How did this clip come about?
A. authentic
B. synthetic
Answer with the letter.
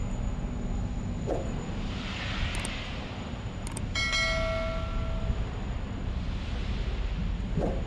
A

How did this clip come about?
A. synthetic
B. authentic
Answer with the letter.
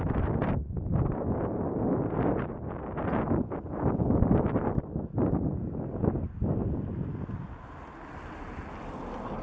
B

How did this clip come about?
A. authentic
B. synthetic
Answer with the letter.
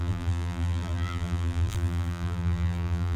B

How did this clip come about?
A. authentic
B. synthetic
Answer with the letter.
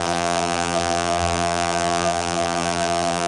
B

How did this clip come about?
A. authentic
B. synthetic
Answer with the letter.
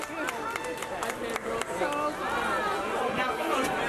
A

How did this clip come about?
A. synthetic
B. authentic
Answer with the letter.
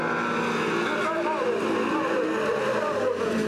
B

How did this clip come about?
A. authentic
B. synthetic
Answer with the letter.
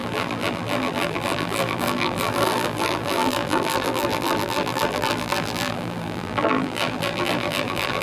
B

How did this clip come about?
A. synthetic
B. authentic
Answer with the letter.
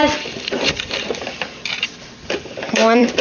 A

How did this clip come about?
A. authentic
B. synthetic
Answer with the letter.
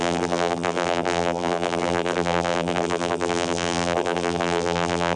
B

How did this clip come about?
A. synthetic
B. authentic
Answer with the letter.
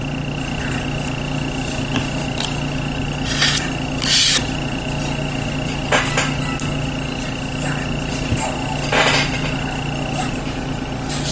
B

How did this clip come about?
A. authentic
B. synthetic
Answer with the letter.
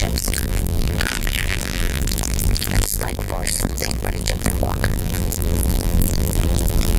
B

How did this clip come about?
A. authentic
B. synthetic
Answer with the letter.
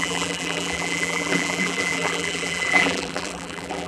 B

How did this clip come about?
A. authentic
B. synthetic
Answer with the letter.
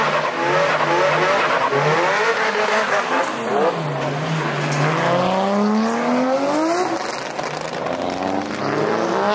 A